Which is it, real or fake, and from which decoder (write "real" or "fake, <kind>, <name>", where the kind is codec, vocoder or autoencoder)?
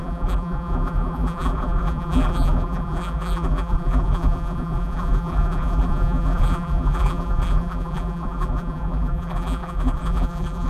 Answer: fake, vocoder, BigVGAN v2